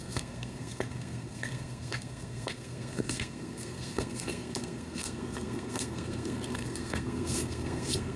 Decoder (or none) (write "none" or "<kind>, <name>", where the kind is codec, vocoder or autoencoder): codec, SNAC